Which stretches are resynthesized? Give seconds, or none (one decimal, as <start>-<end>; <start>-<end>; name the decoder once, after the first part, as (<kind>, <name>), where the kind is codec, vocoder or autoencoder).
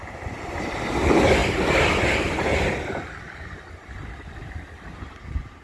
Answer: none